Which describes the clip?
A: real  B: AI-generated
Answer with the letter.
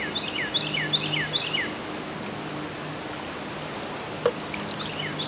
A